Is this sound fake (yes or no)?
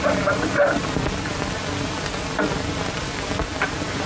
no